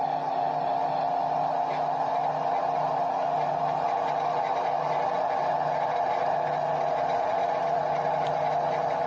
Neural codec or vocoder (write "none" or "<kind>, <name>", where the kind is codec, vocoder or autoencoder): none